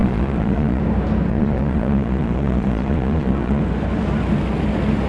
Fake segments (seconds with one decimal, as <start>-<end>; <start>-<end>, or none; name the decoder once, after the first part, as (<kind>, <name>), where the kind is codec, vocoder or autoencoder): 0.0-0.8 (vocoder, Vocos); 1.3-3.6